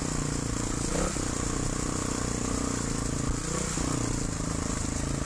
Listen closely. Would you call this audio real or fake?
real